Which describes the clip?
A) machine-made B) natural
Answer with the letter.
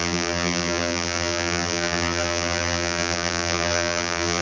A